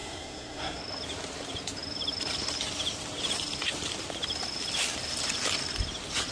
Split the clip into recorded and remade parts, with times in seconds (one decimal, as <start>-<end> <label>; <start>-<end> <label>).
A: 0.0-0.8 remade; 0.8-6.3 recorded